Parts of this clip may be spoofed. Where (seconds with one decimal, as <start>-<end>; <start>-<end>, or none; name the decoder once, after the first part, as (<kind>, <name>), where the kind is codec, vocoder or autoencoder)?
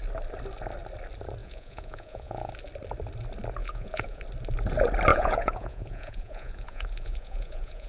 1.4-2.5 (vocoder, Vocos); 3.6-4.2; 5.1-7.9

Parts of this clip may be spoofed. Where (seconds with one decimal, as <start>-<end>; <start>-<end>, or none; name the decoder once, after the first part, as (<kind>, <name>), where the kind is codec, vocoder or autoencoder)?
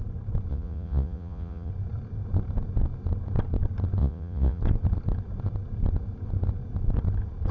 0.5-1.7 (vocoder, Vocos); 4.0-4.6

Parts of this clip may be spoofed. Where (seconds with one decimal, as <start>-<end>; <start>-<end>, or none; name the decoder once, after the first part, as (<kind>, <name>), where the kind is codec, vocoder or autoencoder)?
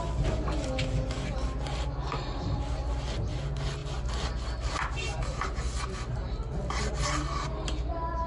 none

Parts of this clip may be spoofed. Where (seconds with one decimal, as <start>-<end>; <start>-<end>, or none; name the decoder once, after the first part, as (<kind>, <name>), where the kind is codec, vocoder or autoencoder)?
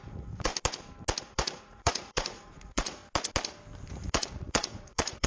0.0-0.5 (vocoder, Vocos); 1.2-3.0; 3.9-5.3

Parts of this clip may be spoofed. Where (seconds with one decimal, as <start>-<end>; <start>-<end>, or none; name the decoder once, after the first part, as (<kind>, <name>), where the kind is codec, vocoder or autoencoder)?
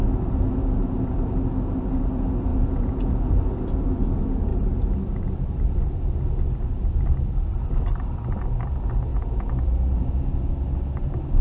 2.5-3.1 (vocoder, Vocos); 9.1-10.5